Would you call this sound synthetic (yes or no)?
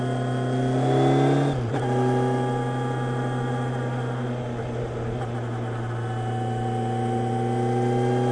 no